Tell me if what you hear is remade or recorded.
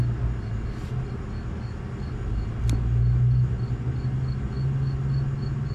recorded